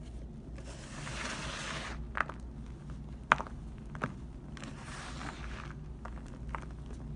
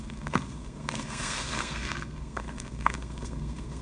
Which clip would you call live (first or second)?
first